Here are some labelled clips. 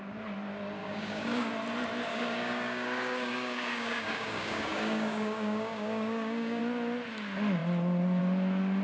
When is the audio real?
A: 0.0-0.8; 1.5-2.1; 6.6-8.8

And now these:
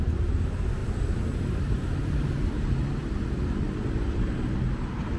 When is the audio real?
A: 0.8-1.9; 3.0-3.9

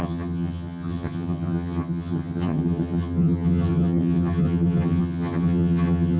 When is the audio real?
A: none

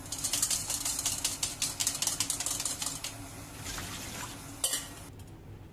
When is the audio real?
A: 0.0-5.7

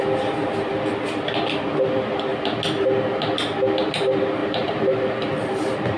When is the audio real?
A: 0.0-4.4

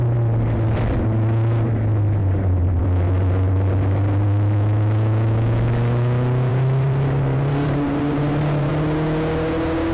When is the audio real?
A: 0.0-2.2; 2.8-6.5; 8.7-9.9

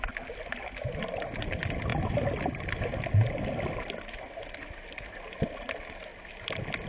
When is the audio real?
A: 0.0-6.9

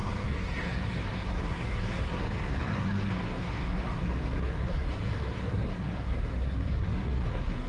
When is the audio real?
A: none